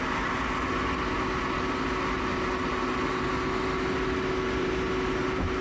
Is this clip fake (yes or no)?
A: no